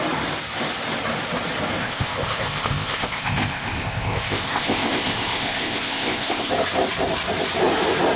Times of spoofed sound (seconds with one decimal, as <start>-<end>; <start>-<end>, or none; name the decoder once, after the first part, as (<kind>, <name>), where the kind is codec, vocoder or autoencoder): 1.8-6.5 (codec, ZipCodec)